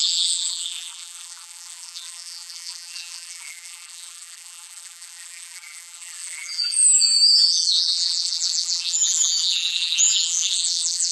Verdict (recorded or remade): remade